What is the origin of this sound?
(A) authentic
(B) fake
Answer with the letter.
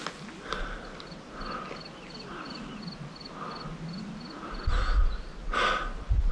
A